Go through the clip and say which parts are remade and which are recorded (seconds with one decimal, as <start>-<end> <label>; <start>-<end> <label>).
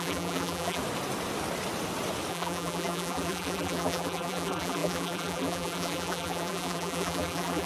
0.0-0.8 remade; 0.8-2.3 recorded; 2.3-7.7 remade